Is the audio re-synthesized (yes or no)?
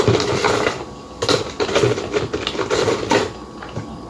no